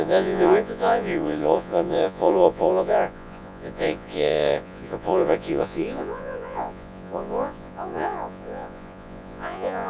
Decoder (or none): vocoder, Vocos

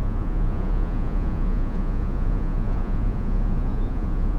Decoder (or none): vocoder, Vocos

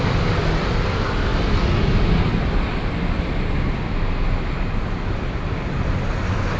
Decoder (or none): none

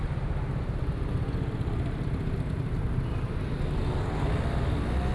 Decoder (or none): none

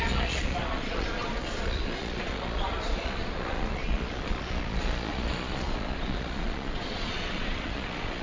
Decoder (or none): vocoder, Vocos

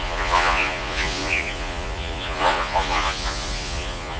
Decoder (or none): vocoder, Vocos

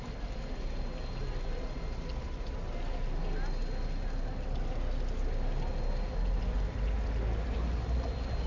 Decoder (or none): none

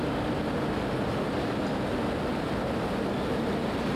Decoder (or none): none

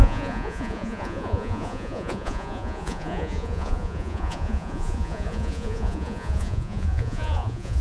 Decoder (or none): vocoder, Vocos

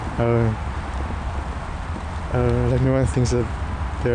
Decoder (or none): none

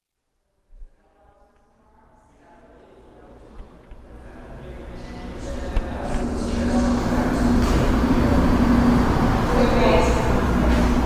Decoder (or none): none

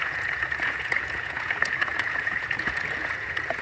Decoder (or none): vocoder, Vocos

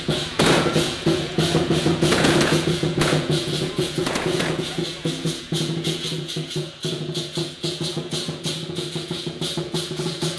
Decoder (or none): vocoder, Vocos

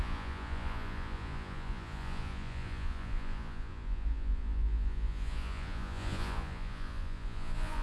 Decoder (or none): vocoder, Vocos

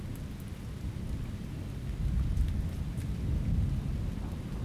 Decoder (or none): none